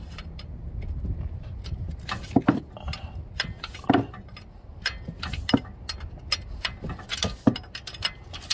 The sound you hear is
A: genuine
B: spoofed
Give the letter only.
A